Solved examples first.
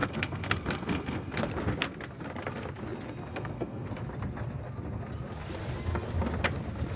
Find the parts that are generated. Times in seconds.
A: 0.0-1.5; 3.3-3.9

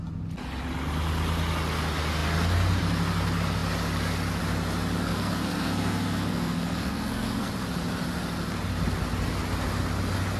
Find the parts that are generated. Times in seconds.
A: 5.1-7.5

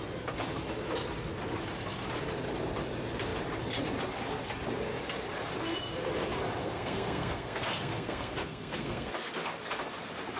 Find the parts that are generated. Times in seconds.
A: 6.6-9.1

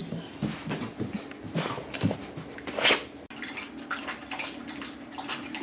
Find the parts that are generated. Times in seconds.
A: none

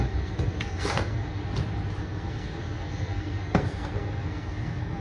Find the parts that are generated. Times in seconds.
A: 0.0-1.4; 2.0-5.0

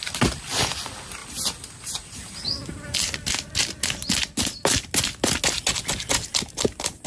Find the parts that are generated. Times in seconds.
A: none

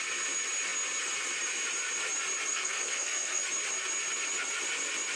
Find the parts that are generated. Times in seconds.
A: 2.5-3.4